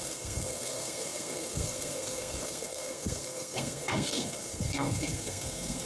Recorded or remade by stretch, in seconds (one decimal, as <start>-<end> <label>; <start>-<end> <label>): 0.0-5.9 remade